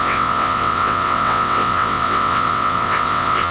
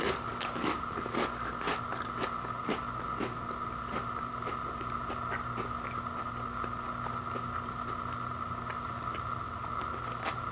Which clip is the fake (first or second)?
first